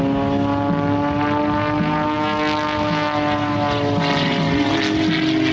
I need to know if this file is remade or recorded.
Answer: recorded